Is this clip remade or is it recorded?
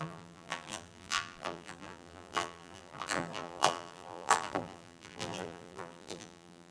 remade